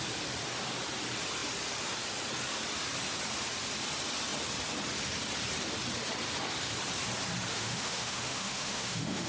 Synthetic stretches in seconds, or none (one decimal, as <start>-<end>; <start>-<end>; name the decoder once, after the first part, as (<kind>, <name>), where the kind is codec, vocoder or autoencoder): 7.5-9.3 (autoencoder, DAC-VAE)